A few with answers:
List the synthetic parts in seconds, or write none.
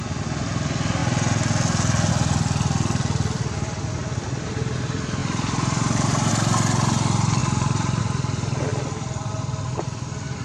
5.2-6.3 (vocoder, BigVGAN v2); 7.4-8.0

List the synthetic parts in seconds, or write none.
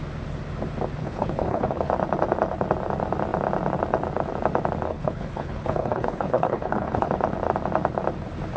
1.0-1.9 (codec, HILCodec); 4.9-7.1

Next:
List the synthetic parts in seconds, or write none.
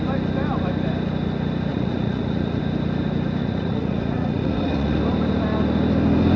1.7-2.6 (vocoder, Vocos); 3.4-5.0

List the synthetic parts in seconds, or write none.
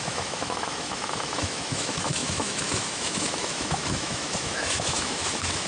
0.0-5.7 (autoencoder, DAC-VAE)